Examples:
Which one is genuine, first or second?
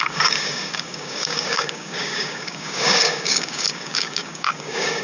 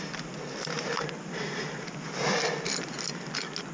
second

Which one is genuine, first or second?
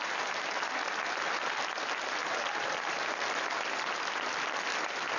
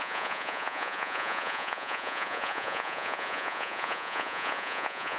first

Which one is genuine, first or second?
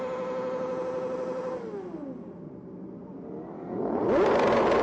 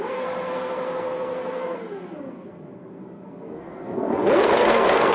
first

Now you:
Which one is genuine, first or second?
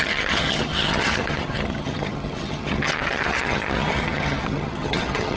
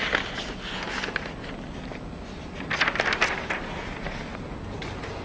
second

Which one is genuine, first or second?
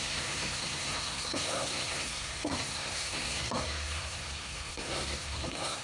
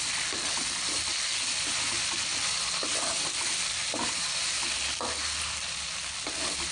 second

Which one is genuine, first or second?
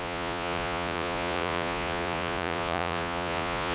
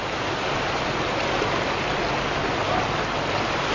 second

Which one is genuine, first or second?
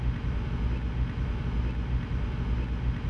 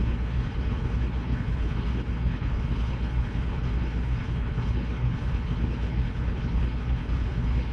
first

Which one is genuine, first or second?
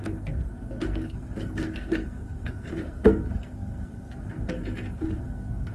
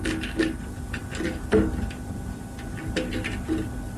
second